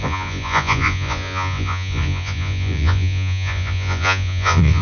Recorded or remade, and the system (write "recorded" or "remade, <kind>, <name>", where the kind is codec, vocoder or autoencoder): remade, vocoder, Vocos